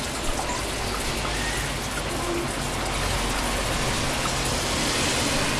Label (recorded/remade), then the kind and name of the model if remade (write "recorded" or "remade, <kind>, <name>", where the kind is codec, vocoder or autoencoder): recorded